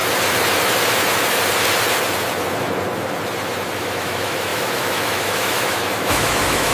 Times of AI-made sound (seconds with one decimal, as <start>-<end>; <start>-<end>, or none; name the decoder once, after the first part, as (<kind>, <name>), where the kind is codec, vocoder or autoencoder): 3.8-6.7 (autoencoder, DAC-VAE)